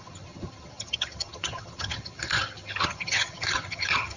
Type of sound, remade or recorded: remade